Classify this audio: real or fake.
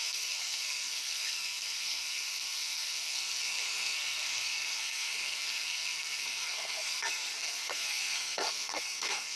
fake